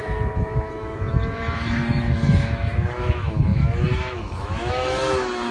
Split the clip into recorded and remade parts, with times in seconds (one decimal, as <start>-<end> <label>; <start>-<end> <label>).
0.0-5.5 remade